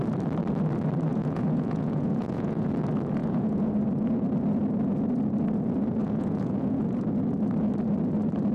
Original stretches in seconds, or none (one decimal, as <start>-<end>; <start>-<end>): 0.0-1.1; 2.7-3.2; 3.7-6.0; 7.0-8.5